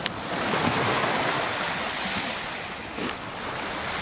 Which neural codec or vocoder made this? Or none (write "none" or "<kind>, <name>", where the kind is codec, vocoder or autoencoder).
none